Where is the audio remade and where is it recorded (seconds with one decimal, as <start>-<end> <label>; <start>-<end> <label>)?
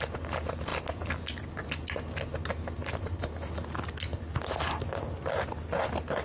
0.0-6.2 recorded